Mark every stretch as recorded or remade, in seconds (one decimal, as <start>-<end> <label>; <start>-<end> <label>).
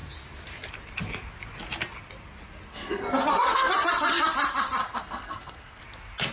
0.0-2.7 recorded; 2.7-3.7 remade; 3.7-4.8 recorded; 4.8-5.8 remade; 5.8-6.3 recorded